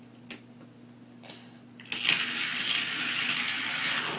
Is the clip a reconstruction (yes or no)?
no